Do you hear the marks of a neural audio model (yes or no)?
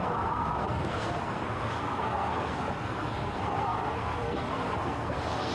yes